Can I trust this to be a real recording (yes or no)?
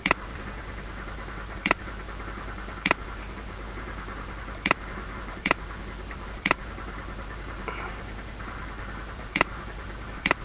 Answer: no